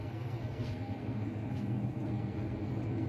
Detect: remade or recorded remade